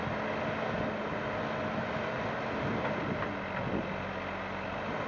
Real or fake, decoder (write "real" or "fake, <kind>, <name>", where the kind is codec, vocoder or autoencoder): real